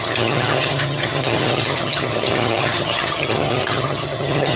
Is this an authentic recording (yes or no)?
no